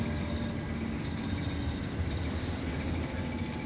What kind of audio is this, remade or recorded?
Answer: recorded